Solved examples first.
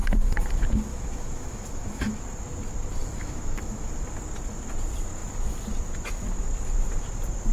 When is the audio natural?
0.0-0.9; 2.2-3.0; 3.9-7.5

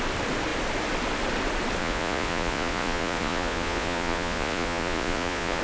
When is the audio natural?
0.0-1.8

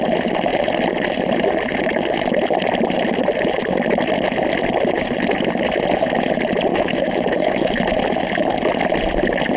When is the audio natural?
0.0-6.7; 7.7-9.6

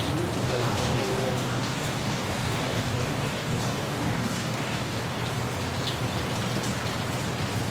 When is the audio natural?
0.0-0.4; 5.0-7.7

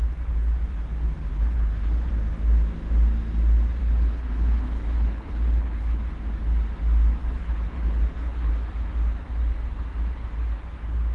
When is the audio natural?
0.0-1.3; 2.1-3.8; 6.1-7.2; 8.5-11.1

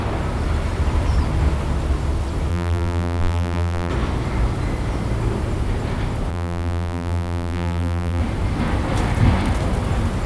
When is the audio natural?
0.0-2.5; 3.9-6.3; 8.2-10.3